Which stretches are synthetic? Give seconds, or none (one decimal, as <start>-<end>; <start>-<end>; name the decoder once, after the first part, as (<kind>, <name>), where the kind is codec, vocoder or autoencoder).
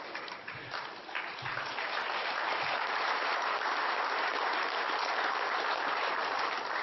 0.0-6.8 (vocoder, BigVGAN v2)